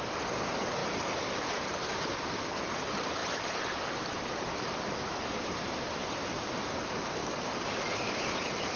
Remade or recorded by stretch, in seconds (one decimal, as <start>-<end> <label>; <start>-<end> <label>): 0.0-7.2 remade; 7.2-8.4 recorded; 8.4-8.8 remade